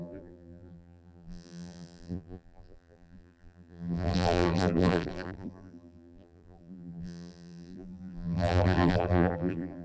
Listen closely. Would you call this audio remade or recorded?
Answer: remade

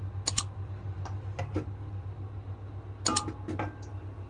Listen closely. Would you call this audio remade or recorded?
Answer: recorded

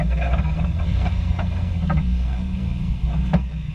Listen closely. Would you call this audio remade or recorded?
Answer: remade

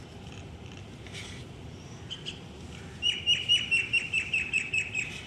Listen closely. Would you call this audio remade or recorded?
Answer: remade